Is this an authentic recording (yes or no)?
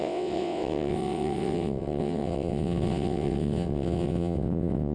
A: no